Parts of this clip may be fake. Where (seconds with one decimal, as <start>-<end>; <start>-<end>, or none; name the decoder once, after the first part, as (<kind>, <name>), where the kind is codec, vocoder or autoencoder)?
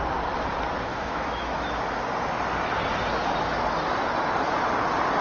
0.9-2.0 (autoencoder, DAC-VAE)